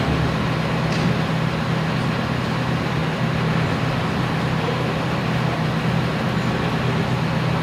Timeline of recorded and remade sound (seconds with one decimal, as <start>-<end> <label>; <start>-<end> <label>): 0.0-7.6 recorded